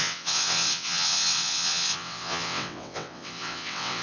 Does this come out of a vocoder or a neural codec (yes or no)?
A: yes